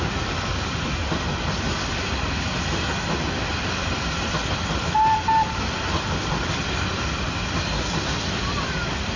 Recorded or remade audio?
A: recorded